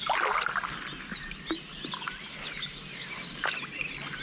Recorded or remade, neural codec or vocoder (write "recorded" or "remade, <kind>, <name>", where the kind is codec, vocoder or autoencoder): recorded